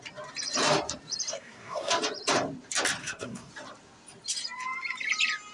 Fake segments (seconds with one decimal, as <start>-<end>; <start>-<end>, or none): 1.3-1.9; 3.0-3.5